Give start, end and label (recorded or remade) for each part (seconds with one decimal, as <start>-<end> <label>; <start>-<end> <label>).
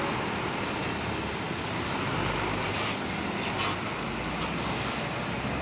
0.0-5.6 recorded